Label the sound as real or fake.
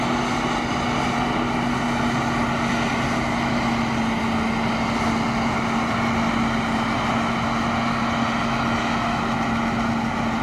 real